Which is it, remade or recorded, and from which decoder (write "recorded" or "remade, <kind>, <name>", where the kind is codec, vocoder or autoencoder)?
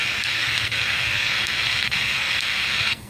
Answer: remade, codec, SNAC